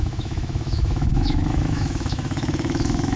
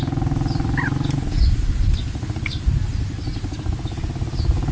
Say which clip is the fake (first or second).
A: first